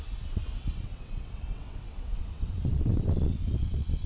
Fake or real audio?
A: fake